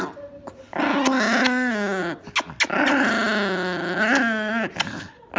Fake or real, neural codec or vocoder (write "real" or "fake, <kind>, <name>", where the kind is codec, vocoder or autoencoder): real